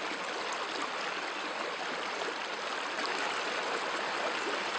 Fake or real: real